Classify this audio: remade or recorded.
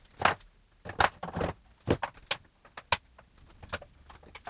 recorded